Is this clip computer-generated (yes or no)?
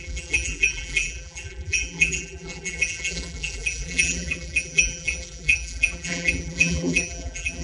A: yes